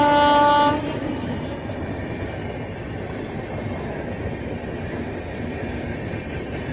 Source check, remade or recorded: recorded